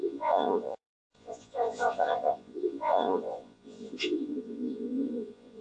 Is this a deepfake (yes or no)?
yes